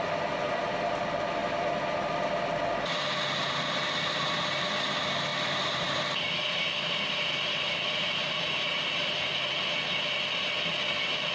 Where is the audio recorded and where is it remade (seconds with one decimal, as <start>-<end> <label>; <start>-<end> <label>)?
0.0-5.3 recorded; 5.3-9.5 remade; 9.5-11.3 recorded